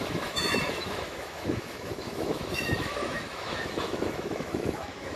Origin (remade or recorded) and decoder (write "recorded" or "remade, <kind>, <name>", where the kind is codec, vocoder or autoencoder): remade, autoencoder, DAC-VAE